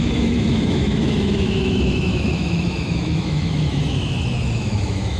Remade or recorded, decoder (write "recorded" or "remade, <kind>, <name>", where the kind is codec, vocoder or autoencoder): remade, autoencoder, DAC-VAE